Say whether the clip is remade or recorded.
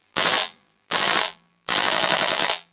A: remade